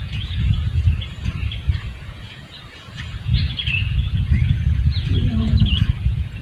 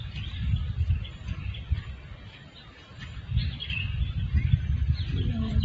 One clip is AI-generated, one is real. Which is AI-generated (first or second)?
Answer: first